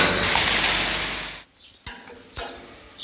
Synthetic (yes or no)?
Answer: no